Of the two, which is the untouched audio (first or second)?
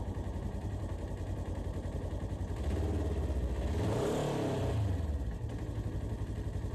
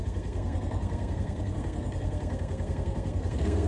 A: first